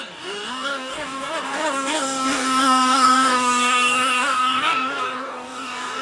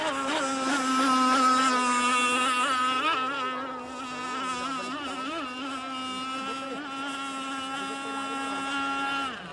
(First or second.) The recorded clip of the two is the second